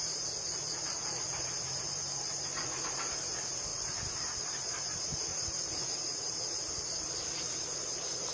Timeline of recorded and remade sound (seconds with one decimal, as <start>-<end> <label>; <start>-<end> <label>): 0.0-3.7 remade; 3.7-4.5 recorded; 4.5-8.3 remade